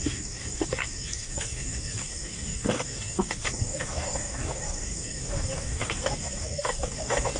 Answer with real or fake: fake